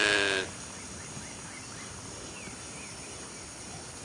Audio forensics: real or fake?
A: real